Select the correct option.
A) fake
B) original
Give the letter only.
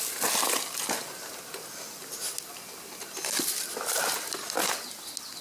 B